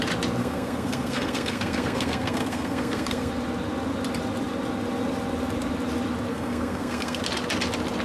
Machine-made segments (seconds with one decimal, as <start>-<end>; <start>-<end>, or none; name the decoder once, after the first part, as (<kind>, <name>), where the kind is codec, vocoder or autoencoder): 0.4-3.3 (codec, SNAC); 6.3-7.2